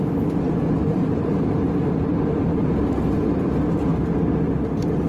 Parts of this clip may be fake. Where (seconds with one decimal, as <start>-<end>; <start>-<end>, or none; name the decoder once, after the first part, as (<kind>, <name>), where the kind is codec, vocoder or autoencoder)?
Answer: 0.8-2.9 (vocoder, BigVGAN v2); 3.9-5.1